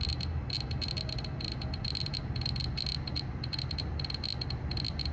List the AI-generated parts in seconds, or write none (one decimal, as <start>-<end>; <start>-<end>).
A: none